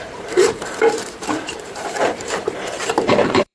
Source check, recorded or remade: remade